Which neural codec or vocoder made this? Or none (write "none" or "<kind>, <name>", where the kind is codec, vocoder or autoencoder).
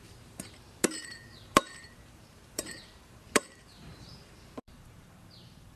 vocoder, BigVGAN v2